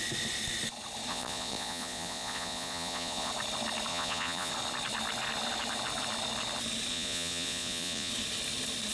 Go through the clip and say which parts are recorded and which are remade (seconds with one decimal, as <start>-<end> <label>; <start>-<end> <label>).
0.0-1.1 recorded; 1.1-3.3 remade; 3.3-3.9 recorded; 3.9-4.5 remade; 4.5-6.9 recorded; 6.9-8.1 remade; 8.1-8.9 recorded

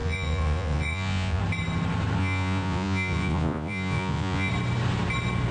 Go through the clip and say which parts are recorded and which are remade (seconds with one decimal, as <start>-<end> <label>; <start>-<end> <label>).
0.0-1.4 remade; 1.4-2.2 recorded; 2.2-4.5 remade; 4.5-5.5 recorded